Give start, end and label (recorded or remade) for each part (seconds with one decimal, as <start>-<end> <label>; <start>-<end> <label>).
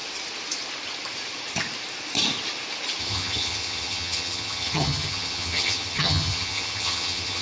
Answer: 0.0-3.0 recorded; 3.0-7.4 remade